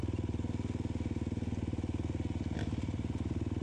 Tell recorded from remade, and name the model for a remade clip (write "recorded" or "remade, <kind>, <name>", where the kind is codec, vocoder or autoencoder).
recorded